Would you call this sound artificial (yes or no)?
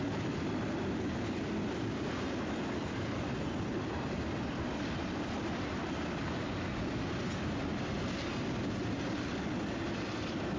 no